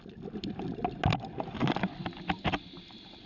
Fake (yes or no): no